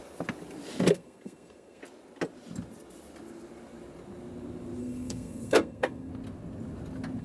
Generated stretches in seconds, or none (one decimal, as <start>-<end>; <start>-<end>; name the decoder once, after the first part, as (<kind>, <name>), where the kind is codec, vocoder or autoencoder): 0.9-1.8 (codec, SNAC); 4.8-6.1